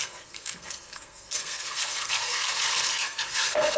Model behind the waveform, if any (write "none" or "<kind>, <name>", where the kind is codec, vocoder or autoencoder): codec, SNAC